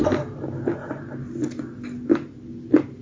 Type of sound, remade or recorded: recorded